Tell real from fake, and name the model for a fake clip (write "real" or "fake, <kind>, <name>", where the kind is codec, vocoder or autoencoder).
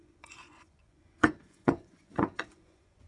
fake, vocoder, Vocos